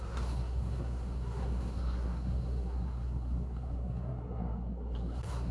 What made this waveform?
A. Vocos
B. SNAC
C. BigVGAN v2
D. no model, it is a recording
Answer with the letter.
B